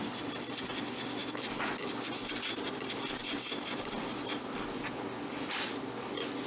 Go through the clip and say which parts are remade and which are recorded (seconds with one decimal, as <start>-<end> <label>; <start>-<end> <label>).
0.0-6.5 remade